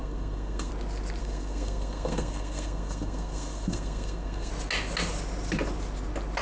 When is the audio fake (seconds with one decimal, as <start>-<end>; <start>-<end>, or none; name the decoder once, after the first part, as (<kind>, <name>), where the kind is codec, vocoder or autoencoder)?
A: 0.0-0.7 (codec, SNAC); 1.2-4.5